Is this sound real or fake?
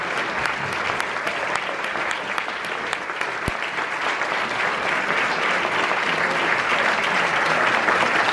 real